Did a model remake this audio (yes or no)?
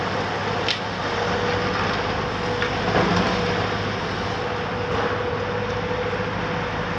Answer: no